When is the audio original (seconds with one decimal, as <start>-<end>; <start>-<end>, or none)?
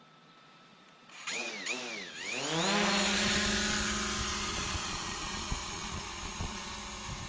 0.0-0.7; 1.5-4.5; 6.7-7.3